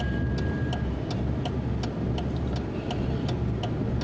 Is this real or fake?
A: real